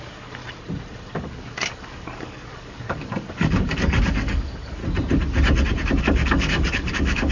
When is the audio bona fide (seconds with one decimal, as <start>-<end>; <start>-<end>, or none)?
0.4-1.0; 4.8-6.0